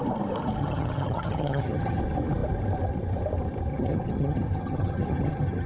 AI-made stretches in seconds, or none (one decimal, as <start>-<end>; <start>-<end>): 0.6-2.0; 3.7-5.7